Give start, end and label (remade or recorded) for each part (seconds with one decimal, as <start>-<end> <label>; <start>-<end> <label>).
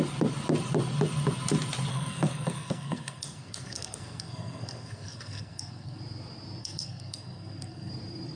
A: 0.0-1.9 recorded; 1.9-6.0 remade; 6.0-6.6 recorded; 6.6-7.9 remade; 7.9-8.4 recorded